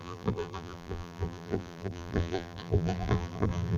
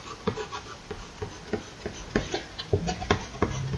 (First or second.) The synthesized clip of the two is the first